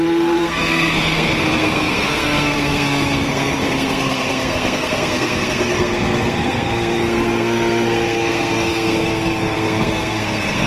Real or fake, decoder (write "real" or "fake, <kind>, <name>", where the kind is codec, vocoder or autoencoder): fake, codec, SNAC